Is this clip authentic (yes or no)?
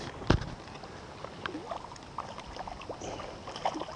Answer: yes